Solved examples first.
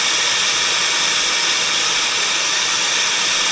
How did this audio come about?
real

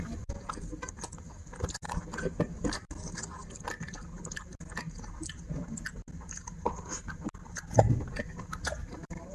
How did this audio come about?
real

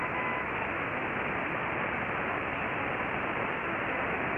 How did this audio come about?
fake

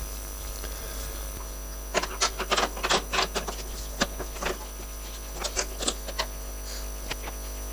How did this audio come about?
real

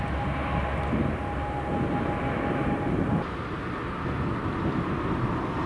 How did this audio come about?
real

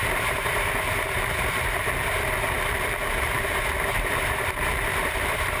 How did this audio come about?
fake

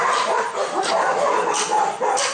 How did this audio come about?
real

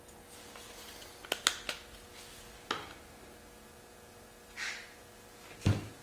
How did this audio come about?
real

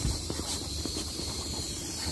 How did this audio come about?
fake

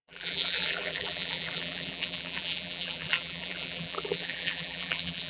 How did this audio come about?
fake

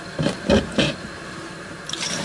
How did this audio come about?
fake